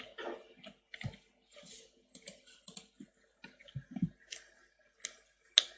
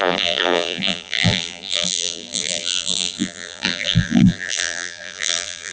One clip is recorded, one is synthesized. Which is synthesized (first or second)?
second